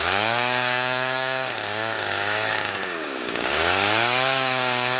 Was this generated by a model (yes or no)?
yes